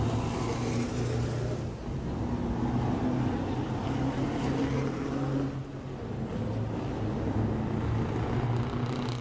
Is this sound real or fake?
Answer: real